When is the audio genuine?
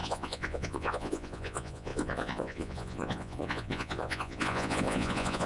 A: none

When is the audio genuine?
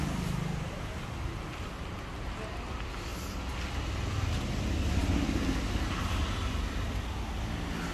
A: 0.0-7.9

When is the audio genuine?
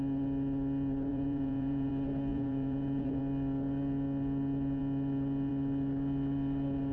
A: 0.0-1.1; 1.9-2.3; 3.2-6.9